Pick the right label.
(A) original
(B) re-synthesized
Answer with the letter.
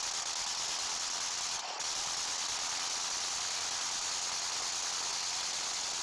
A